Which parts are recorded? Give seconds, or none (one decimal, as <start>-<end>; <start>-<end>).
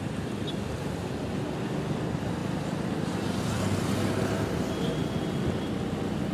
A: 0.0-6.3